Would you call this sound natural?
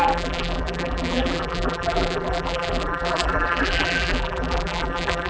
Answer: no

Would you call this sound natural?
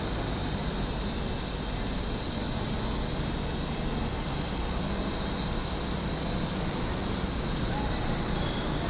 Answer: yes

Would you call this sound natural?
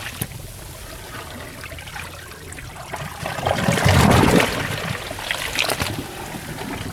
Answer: yes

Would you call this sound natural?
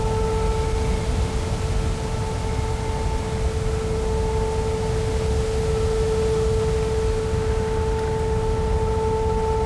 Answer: yes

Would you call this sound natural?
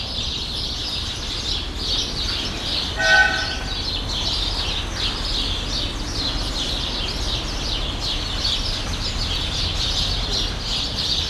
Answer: yes